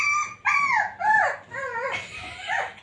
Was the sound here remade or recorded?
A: recorded